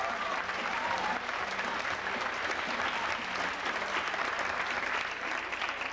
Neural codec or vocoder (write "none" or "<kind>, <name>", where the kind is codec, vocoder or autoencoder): vocoder, BigVGAN v2